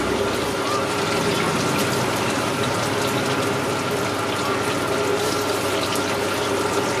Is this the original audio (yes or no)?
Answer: yes